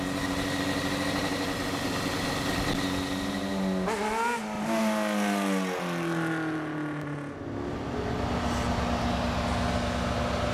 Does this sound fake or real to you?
real